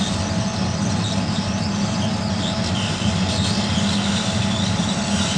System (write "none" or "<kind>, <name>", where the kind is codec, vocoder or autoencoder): none